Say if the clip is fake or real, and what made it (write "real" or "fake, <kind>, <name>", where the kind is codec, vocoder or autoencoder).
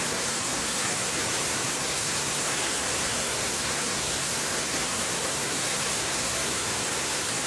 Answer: fake, codec, SNAC